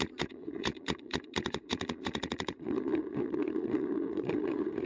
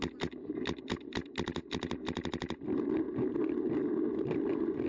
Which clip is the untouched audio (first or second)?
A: second